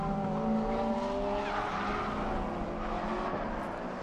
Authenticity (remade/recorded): recorded